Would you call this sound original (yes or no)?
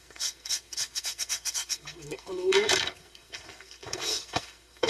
no